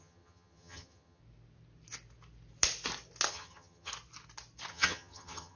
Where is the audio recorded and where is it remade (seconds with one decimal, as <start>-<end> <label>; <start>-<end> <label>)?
0.0-1.2 remade; 1.2-3.3 recorded; 3.3-3.9 remade; 3.9-4.7 recorded; 4.7-5.6 remade